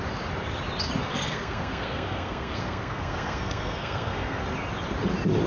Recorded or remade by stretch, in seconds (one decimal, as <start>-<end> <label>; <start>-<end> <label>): 0.0-1.1 recorded; 1.1-4.4 remade; 4.4-5.5 recorded